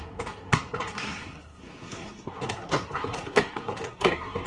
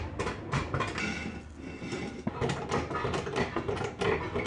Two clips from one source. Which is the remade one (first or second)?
first